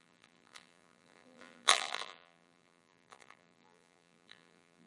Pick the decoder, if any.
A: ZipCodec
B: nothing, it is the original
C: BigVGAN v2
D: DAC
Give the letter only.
C